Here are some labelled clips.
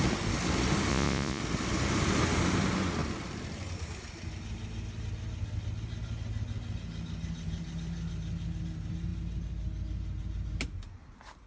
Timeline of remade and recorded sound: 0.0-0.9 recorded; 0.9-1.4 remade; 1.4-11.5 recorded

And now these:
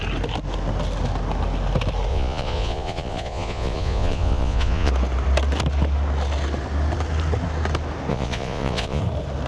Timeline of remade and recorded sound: 0.0-2.1 recorded; 2.1-4.9 remade; 4.9-8.1 recorded; 8.1-9.0 remade; 9.0-9.5 recorded

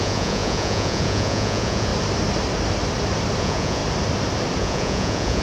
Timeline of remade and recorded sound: 0.0-1.9 remade; 1.9-3.4 recorded; 3.4-3.8 remade; 3.8-4.6 recorded; 4.6-5.4 remade

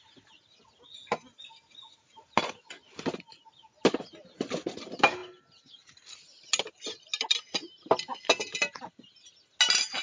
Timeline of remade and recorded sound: 0.0-10.0 recorded

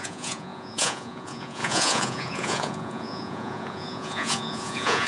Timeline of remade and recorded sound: 0.0-5.1 remade